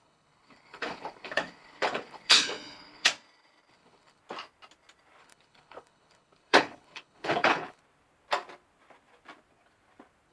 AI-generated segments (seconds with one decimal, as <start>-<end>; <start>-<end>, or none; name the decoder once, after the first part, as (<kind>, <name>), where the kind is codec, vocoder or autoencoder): 0.0-3.1 (codec, HILCodec); 3.7-4.2; 5.2-7.8

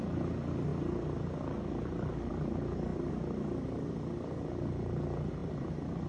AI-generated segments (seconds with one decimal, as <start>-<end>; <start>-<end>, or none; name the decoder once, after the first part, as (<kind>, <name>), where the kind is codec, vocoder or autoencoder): 2.9-4.0 (vocoder, BigVGAN v2); 5.4-6.1

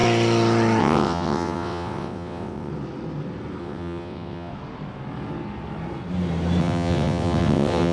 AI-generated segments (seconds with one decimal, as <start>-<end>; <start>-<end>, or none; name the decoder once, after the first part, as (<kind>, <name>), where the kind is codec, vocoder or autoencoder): 0.8-2.7 (vocoder, WaveNeXt); 3.6-4.5; 6.6-7.9

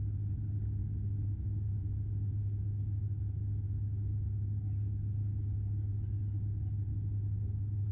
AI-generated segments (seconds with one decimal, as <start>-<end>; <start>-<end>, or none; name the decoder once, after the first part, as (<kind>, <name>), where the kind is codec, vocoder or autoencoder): 0.8-5.2 (autoencoder, DAC-VAE)

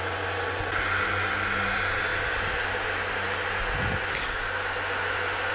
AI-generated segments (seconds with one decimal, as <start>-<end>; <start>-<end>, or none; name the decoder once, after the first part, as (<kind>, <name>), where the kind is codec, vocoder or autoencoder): none